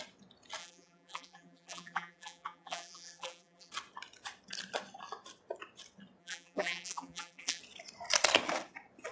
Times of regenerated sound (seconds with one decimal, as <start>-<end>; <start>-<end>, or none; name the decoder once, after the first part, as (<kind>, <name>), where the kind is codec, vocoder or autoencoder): 0.6-3.7 (vocoder, BigVGAN v2); 6.2-7.6